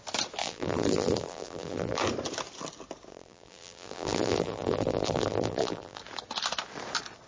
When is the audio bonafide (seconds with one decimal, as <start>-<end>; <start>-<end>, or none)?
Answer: 0.0-0.4; 2.0-3.1; 6.0-7.3